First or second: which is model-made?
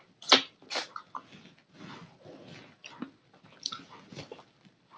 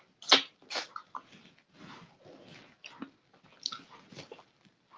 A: first